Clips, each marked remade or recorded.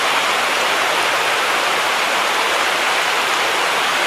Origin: remade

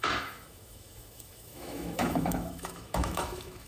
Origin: remade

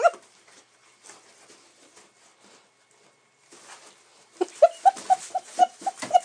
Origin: recorded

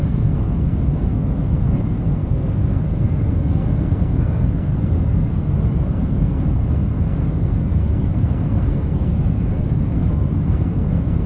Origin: remade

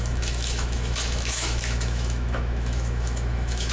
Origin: remade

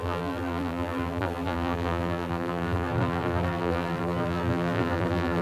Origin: remade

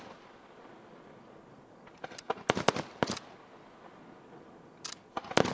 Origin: recorded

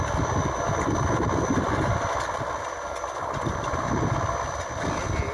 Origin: recorded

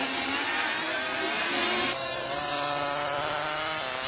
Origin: recorded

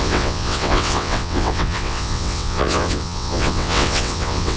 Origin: remade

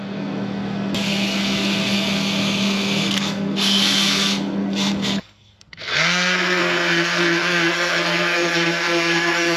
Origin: remade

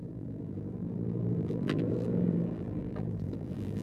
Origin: remade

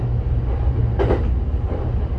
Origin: recorded